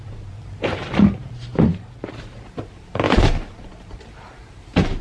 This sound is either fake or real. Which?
fake